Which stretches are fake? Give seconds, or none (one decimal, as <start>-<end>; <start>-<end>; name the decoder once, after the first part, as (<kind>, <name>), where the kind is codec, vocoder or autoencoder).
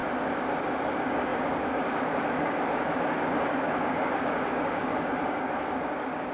0.9-6.3 (codec, DAC)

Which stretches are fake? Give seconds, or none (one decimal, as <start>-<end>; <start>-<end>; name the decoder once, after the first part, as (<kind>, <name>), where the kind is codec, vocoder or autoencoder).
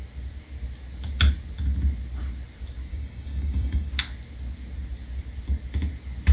2.9-3.9 (codec, DAC)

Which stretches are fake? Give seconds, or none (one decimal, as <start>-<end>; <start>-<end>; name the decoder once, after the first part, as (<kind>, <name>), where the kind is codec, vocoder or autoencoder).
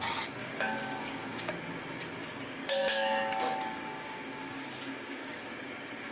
0.4-1.5 (codec, DAC); 2.2-5.5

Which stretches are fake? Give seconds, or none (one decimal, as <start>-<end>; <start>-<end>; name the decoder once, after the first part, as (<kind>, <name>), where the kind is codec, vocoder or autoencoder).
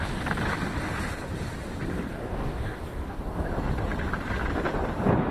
2.1-3.5 (codec, DAC)